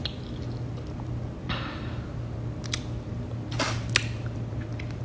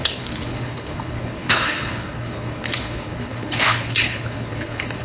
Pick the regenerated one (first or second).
second